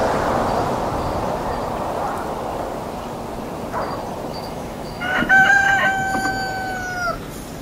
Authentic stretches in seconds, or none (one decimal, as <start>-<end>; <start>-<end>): 0.0-4.3; 6.3-7.6